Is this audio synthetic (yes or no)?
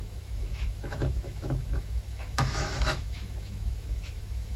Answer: yes